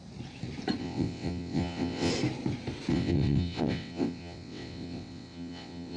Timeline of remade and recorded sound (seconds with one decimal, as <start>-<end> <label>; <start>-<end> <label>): 0.0-0.8 recorded; 0.8-2.1 remade; 2.1-2.9 recorded; 2.9-6.0 remade